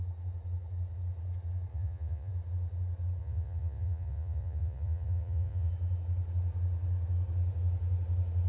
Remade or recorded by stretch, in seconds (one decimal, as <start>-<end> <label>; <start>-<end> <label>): 0.0-1.7 recorded; 1.7-2.3 remade; 2.3-3.2 recorded; 3.2-5.7 remade; 5.7-8.5 recorded